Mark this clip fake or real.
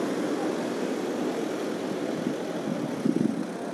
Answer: real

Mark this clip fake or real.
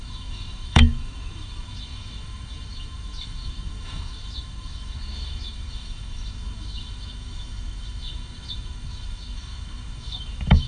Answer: fake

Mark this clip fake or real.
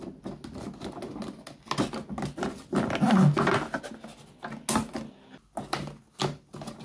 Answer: real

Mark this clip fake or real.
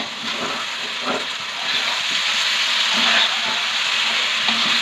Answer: real